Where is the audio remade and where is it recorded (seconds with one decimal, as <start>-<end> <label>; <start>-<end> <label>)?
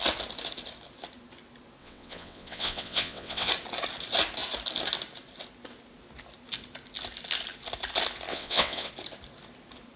0.0-1.8 recorded; 1.8-3.5 remade; 3.5-8.3 recorded; 8.3-8.9 remade; 8.9-10.0 recorded